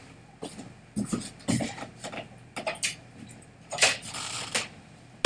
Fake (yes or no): no